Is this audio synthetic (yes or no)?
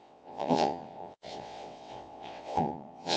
yes